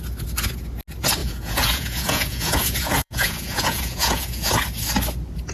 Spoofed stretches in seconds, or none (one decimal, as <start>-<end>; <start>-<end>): 1.2-4.5